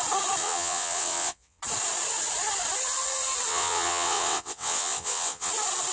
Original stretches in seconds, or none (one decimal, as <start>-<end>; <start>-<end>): 0.0-0.4; 1.6-3.5; 5.5-5.9